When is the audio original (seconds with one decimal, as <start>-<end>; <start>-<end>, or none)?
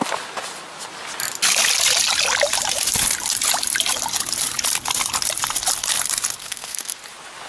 0.0-6.4; 7.0-7.5